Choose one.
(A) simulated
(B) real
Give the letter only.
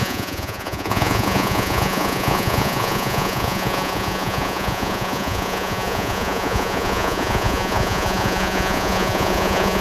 A